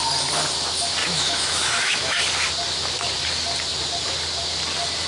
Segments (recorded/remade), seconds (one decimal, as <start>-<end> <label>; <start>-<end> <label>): 0.0-1.0 recorded; 1.0-2.2 remade; 2.2-5.1 recorded

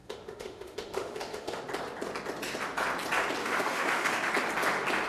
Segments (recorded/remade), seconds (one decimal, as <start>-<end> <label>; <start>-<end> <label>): 0.0-1.6 remade; 1.6-3.4 recorded; 3.4-4.3 remade; 4.3-5.1 recorded

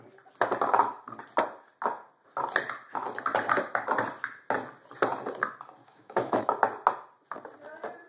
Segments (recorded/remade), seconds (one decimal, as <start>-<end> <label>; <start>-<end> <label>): 0.0-5.8 recorded; 5.8-6.4 remade; 6.4-8.1 recorded

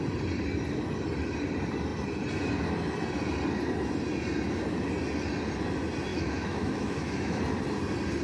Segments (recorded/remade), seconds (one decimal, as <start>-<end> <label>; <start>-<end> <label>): 0.0-6.1 recorded; 6.1-7.4 remade; 7.4-8.2 recorded

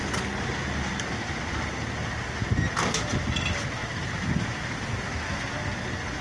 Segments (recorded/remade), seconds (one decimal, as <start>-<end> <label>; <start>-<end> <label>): 0.0-6.2 recorded